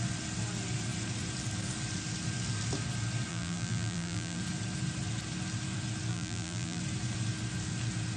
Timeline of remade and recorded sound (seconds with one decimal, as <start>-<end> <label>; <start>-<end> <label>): 0.0-3.3 recorded; 3.3-4.4 remade; 4.4-6.1 recorded; 6.1-6.8 remade; 6.8-8.2 recorded